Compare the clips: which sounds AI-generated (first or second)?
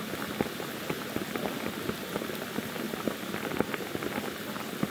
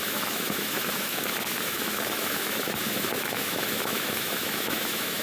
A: second